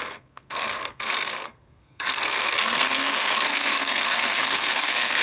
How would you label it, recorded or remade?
remade